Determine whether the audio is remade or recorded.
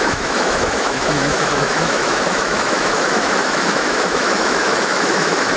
remade